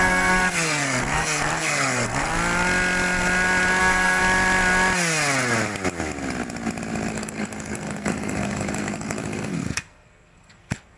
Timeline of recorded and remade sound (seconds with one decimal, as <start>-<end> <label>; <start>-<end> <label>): 0.0-2.3 remade; 2.3-3.8 recorded; 3.8-4.2 remade; 4.2-7.1 recorded; 7.1-11.0 remade